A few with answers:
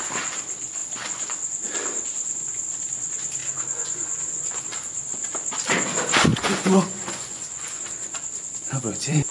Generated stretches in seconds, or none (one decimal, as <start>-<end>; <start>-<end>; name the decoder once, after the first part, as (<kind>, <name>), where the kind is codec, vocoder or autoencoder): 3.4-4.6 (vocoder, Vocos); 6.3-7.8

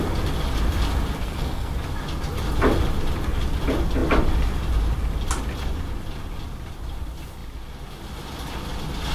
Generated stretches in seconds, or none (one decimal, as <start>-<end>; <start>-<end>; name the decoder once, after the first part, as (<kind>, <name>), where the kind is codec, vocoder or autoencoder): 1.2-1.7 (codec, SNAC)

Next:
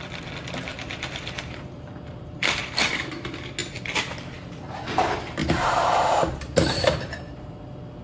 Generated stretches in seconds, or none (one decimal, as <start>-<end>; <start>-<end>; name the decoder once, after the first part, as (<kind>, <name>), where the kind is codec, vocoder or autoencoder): 0.7-3.1 (vocoder, BigVGAN v2); 5.4-7.5

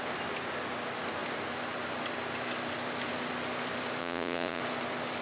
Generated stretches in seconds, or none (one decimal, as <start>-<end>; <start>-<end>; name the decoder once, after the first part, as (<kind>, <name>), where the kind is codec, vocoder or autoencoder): 4.0-4.6 (vocoder, Vocos)